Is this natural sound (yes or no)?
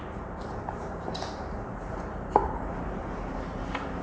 no